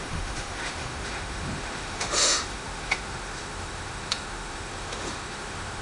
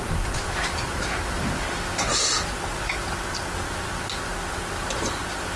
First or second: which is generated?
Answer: first